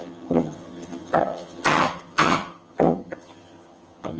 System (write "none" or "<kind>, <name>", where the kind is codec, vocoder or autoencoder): vocoder, HiFi-GAN